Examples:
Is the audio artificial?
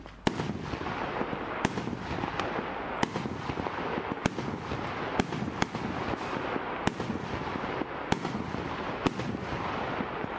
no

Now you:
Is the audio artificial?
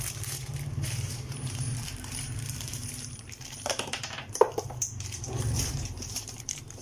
yes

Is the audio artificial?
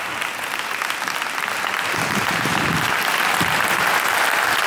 no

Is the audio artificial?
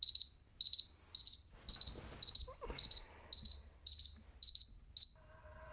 no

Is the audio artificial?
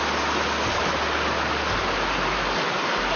no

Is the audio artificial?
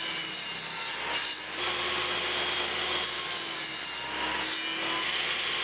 no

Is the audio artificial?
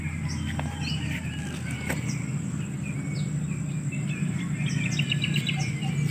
no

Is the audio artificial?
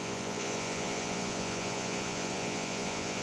yes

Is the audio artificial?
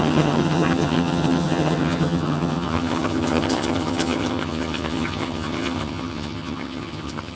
yes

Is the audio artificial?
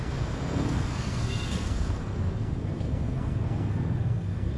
yes